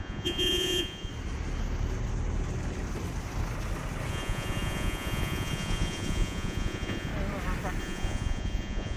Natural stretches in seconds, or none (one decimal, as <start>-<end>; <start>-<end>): 1.1-4.1; 7.1-7.8